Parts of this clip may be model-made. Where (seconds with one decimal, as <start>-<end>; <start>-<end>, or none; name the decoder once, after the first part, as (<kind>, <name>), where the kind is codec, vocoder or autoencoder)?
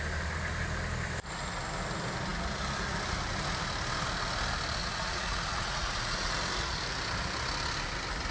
4.8-6.3 (vocoder, Vocos)